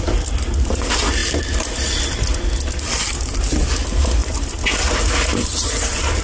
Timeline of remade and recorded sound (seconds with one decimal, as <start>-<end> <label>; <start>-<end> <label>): 0.0-6.2 recorded